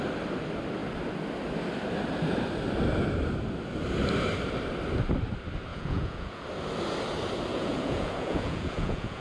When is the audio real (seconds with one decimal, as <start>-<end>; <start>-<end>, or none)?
0.0-5.7; 6.4-7.5